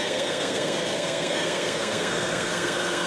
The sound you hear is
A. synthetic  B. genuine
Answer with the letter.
A